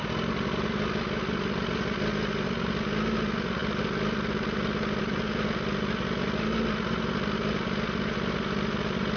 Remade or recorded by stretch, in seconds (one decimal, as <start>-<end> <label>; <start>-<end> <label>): 0.0-9.2 recorded